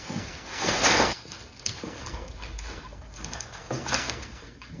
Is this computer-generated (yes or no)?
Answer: yes